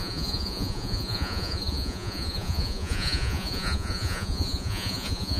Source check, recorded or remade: remade